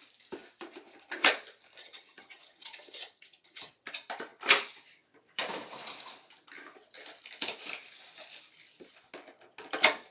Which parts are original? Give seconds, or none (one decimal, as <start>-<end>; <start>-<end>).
0.0-1.8; 3.7-10.1